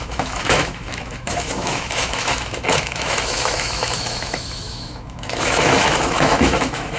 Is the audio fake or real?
fake